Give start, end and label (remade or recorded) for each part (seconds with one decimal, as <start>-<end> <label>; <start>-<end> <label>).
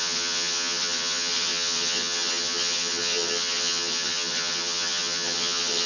0.0-5.9 remade